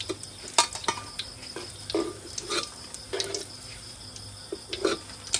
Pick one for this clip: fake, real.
real